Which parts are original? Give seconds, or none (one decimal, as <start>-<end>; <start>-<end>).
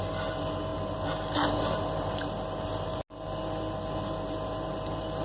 0.0-5.2